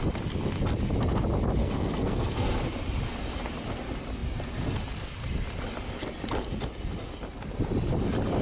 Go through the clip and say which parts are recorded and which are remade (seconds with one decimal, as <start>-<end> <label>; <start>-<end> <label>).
0.0-1.6 recorded; 1.6-2.6 remade; 2.6-8.4 recorded